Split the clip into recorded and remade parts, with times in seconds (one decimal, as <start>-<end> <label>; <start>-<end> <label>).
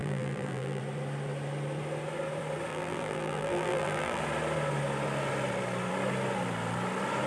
0.0-0.8 remade; 0.8-2.7 recorded; 2.7-4.2 remade; 4.2-7.3 recorded